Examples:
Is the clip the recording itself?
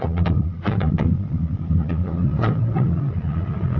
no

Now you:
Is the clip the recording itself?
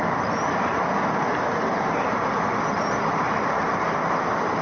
yes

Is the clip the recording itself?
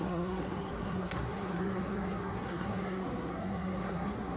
no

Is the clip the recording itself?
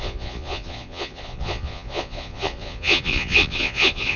no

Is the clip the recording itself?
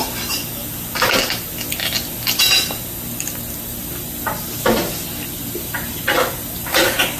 yes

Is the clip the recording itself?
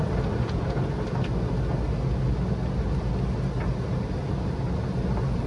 yes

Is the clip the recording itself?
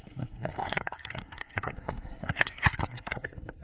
no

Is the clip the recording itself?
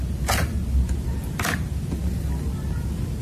yes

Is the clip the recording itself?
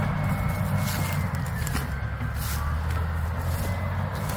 yes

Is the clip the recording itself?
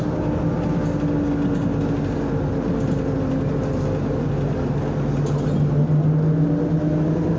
yes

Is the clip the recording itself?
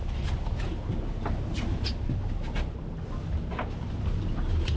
yes